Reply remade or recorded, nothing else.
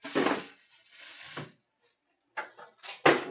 recorded